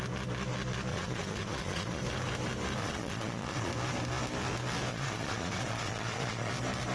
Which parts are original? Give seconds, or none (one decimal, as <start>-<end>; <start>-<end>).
0.0-0.9; 2.0-2.8; 3.7-4.9; 6.5-6.9